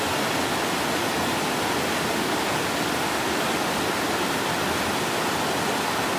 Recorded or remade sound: recorded